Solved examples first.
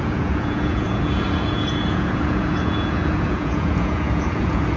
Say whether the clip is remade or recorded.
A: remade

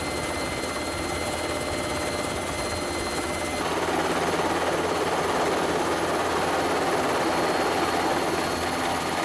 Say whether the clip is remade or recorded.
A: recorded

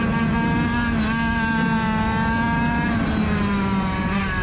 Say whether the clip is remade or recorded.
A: recorded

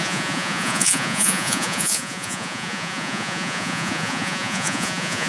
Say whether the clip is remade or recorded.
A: remade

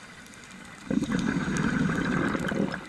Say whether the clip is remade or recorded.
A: recorded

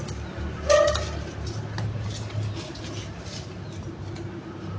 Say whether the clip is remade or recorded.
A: recorded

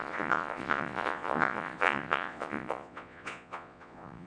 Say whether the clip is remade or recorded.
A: remade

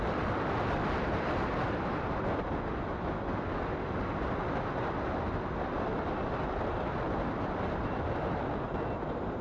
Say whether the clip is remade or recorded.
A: recorded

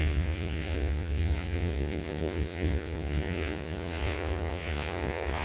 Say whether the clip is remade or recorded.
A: remade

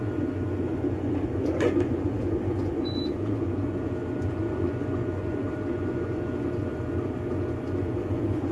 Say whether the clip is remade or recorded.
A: remade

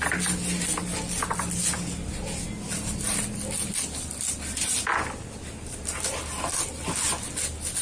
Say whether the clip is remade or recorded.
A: recorded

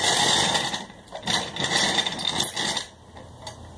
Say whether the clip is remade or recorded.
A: recorded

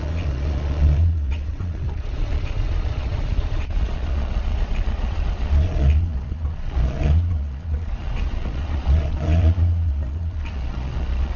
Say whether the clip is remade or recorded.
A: remade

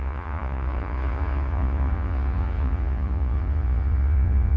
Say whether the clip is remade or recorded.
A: remade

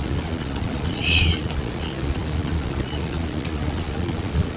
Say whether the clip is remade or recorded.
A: remade